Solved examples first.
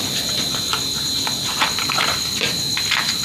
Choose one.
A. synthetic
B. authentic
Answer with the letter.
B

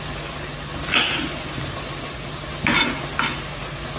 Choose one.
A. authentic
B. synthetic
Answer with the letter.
A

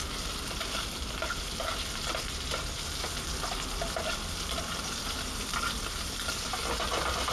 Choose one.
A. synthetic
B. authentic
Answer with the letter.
B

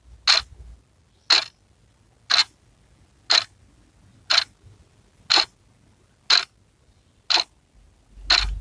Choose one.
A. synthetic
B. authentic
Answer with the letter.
B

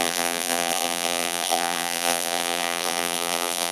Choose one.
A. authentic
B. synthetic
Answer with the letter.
B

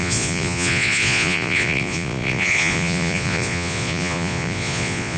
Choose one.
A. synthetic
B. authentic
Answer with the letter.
A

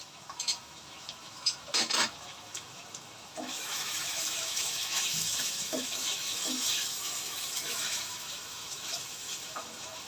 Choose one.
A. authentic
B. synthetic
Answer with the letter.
B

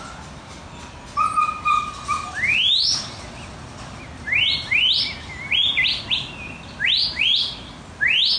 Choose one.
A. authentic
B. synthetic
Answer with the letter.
A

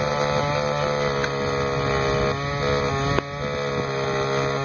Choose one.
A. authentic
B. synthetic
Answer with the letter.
A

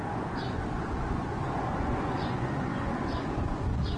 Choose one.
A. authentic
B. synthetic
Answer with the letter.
B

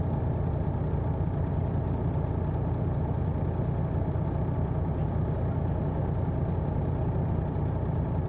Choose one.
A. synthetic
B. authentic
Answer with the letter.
B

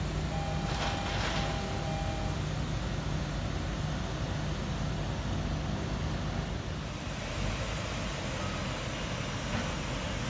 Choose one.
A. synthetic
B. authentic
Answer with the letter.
B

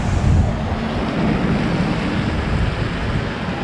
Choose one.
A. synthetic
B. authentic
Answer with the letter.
B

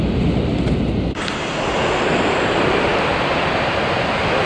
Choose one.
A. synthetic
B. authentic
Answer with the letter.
B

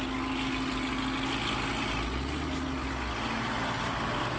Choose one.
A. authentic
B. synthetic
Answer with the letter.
A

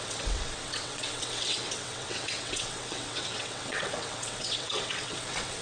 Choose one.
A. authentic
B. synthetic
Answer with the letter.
B